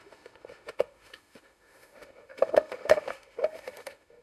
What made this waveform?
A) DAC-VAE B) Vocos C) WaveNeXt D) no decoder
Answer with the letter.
A